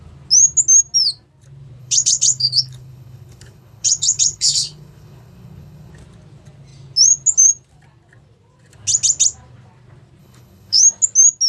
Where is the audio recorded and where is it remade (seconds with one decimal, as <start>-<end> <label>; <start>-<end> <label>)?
0.0-1.8 recorded; 1.8-5.9 remade; 5.9-10.2 recorded; 10.2-10.8 remade; 10.8-11.5 recorded